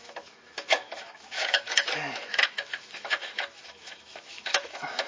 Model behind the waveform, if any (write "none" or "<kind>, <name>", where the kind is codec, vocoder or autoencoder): autoencoder, DAC-VAE